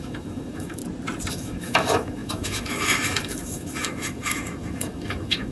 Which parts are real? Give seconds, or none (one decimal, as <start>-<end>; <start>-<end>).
0.8-1.3

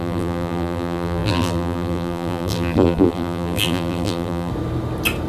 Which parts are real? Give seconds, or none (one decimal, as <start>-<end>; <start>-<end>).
4.5-5.3

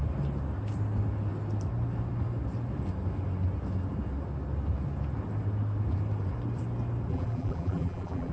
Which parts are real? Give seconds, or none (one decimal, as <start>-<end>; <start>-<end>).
0.0-7.1

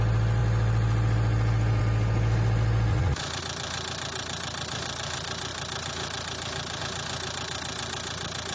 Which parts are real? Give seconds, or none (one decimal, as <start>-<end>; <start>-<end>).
0.0-2.9; 3.4-8.5

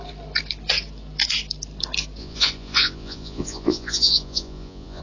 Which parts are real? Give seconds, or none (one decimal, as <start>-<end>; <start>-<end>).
0.0-2.2